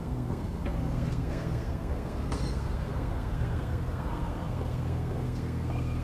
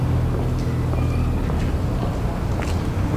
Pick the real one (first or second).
second